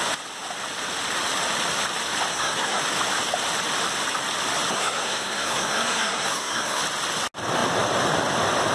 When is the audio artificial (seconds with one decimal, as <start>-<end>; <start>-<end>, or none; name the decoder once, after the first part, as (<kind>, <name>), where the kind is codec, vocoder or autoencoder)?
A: 2.3-2.8 (codec, SNAC); 4.7-6.8